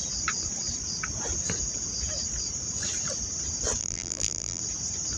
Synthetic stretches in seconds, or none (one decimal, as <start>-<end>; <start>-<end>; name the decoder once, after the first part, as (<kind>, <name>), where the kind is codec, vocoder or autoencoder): 3.8-4.6 (vocoder, BigVGAN v2)

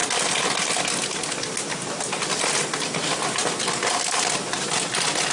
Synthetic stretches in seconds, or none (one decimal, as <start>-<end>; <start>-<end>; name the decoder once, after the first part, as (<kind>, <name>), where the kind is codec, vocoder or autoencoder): none

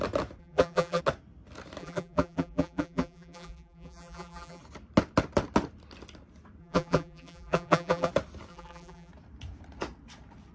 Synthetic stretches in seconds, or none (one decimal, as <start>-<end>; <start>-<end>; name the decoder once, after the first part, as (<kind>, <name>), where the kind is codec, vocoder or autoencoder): 0.4-1.0 (vocoder, BigVGAN v2); 1.8-4.6; 6.6-8.1; 8.5-9.1

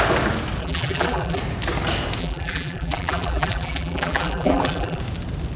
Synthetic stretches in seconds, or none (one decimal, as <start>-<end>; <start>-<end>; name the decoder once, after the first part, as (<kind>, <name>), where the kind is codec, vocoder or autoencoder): 0.6-1.4 (vocoder, BigVGAN v2); 2.2-5.0

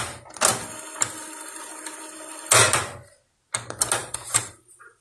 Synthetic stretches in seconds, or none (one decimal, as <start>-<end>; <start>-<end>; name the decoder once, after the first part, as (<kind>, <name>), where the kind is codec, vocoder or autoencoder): 4.0-5.0 (vocoder, BigVGAN v2)

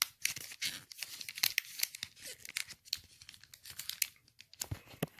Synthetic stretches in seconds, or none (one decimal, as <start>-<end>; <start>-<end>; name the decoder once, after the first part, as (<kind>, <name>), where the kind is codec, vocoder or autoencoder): none

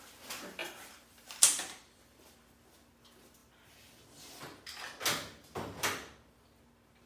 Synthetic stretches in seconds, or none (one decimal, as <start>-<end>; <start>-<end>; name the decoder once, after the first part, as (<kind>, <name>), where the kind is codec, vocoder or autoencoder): 0.6-2.5 (vocoder, BigVGAN v2)

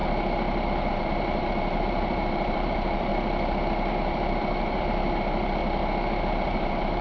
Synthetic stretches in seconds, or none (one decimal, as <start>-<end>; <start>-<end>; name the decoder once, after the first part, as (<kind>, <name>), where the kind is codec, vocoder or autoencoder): 0.9-3.1 (vocoder, BigVGAN v2); 4.0-5.6; 6.2-7.0